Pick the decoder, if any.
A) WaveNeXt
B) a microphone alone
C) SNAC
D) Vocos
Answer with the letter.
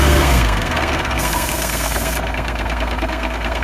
C